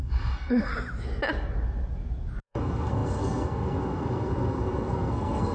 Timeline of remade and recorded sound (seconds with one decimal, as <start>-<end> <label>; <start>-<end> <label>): 0.0-0.7 remade; 0.7-2.4 recorded; 2.4-5.5 remade